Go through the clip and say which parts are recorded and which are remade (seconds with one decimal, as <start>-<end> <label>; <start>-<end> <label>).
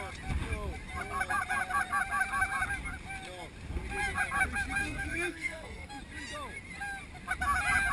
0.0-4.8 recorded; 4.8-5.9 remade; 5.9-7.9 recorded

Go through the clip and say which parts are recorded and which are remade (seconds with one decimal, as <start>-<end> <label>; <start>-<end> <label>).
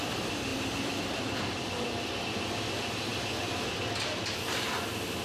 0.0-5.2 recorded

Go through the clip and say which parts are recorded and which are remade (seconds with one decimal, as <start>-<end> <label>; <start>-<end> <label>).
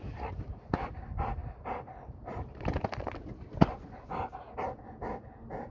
0.0-5.7 recorded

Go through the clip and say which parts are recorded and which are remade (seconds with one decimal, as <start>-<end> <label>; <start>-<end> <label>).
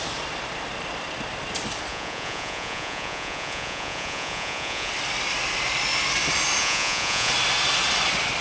0.0-1.9 recorded; 1.9-4.9 remade; 4.9-6.6 recorded; 6.6-7.3 remade; 7.3-8.4 recorded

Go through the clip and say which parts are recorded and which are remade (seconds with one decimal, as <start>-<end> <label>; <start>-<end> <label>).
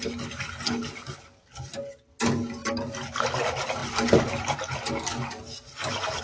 0.0-6.2 recorded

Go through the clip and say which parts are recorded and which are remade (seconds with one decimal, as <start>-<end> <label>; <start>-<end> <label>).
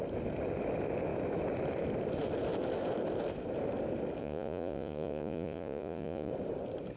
0.0-4.2 recorded; 4.2-6.3 remade; 6.3-7.0 recorded